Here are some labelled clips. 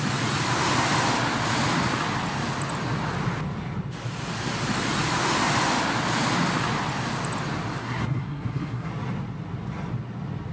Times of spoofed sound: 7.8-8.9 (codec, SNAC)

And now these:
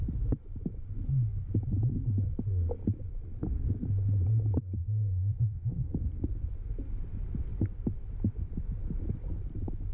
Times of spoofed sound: 4.8-5.9 (codec, SNAC)

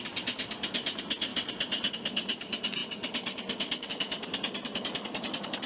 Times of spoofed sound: none

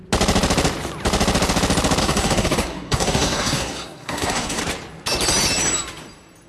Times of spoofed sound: 2.0-4.6 (codec, SNAC)

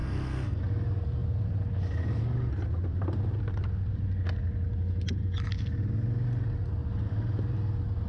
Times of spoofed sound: 0.0-0.6 (codec, SNAC)

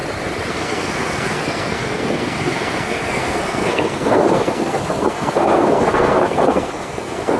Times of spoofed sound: 0.5-7.4 (codec, SNAC)

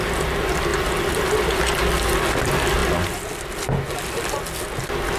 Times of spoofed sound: none

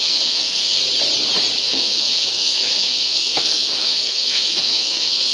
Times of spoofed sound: 0.0-0.8 (codec, SNAC); 1.6-5.3